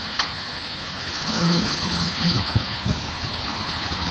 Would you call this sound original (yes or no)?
no